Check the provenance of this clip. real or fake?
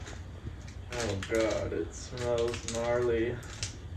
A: real